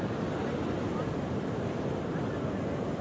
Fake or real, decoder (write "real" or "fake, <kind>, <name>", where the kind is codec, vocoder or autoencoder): real